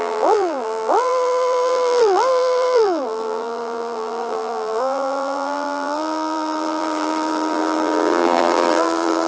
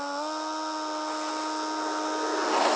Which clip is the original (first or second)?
second